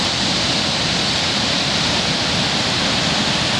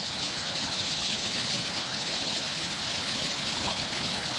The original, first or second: first